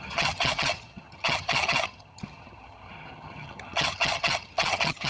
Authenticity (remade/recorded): remade